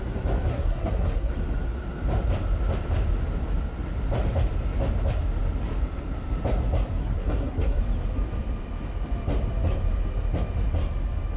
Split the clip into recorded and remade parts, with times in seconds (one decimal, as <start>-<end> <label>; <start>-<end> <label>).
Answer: 0.0-0.5 recorded; 0.5-1.3 remade; 1.3-7.0 recorded; 7.0-7.8 remade; 7.8-11.4 recorded